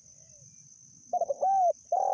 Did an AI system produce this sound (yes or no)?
no